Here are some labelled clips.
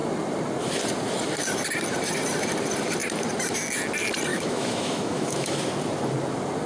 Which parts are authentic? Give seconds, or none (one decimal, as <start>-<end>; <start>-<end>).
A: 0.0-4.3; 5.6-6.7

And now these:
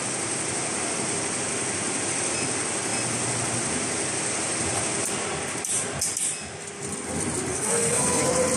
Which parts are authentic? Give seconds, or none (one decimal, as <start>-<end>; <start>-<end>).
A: 0.0-7.5; 8.2-8.6

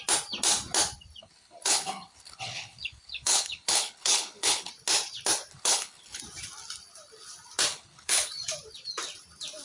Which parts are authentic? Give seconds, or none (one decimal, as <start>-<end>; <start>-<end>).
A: 0.0-1.2; 4.7-5.5; 6.2-7.7; 8.3-9.6

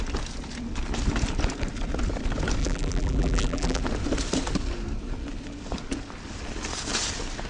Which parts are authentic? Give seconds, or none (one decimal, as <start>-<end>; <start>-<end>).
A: 0.0-2.6; 3.8-7.5

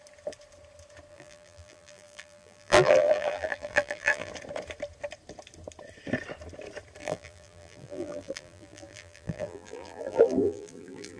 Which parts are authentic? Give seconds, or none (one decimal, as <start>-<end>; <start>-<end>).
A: 0.0-1.1; 4.3-7.0